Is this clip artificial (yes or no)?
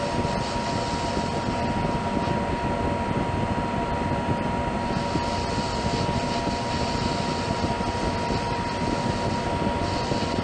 no